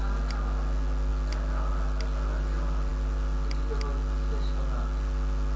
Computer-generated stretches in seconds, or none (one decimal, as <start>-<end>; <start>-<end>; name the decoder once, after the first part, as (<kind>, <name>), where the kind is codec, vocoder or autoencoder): none